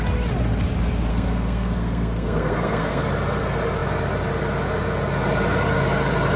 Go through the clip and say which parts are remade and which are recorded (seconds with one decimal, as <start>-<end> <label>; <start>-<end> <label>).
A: 0.0-1.1 recorded; 1.1-3.0 remade; 3.0-6.4 recorded